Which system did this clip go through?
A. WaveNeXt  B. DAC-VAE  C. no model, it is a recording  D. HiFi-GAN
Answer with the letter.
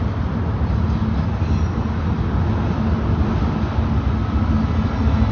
C